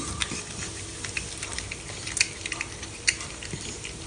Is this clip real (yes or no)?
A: yes